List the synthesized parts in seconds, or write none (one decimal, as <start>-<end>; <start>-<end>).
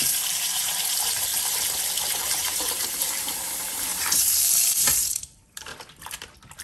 0.0-1.3; 2.2-5.7